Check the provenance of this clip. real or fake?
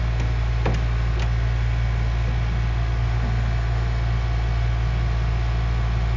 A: real